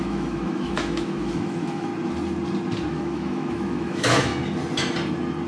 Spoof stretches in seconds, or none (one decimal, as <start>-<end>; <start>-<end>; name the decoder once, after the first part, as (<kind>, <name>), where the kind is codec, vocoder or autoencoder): 0.0-1.9 (autoencoder, DAC-VAE); 2.9-4.3